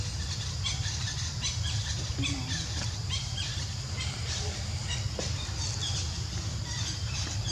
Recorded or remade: recorded